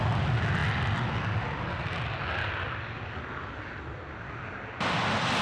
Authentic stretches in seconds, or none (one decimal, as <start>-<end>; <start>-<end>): 0.0-5.4